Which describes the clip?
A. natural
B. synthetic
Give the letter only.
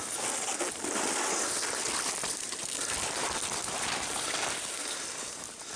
A